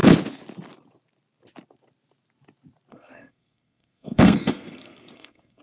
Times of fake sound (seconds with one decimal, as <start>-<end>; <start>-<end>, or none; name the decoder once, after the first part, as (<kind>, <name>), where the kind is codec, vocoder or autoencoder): 2.9-5.6 (codec, SNAC)